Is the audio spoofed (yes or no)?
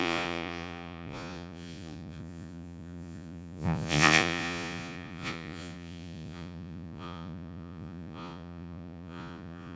yes